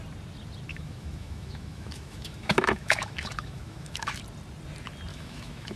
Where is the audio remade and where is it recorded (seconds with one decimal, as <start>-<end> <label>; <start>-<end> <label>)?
0.0-0.7 recorded; 0.7-4.2 remade; 4.2-5.1 recorded; 5.1-5.8 remade

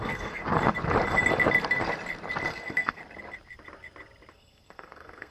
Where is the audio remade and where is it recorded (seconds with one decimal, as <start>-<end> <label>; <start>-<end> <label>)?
0.0-0.4 remade; 0.4-2.5 recorded; 2.5-3.0 remade; 3.0-4.3 recorded; 4.3-5.3 remade

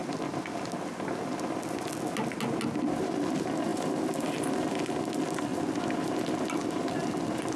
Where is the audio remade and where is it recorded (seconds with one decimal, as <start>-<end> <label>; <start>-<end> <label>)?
0.0-7.6 recorded